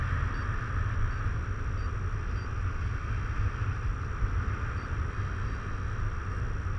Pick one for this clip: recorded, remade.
recorded